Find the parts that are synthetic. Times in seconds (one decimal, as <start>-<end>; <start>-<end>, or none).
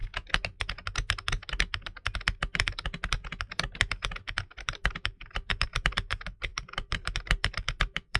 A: 4.2-8.2